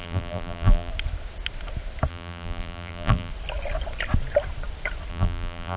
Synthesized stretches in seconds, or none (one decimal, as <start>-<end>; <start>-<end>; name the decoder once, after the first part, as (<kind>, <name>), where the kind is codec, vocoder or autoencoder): 0.0-0.9 (vocoder, BigVGAN v2); 2.1-3.3; 5.1-5.8